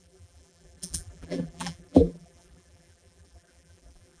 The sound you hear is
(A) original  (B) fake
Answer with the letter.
B